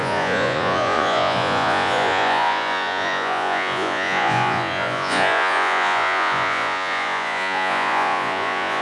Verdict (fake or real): fake